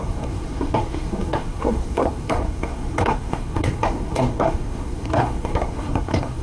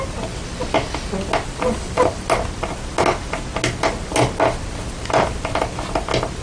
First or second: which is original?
second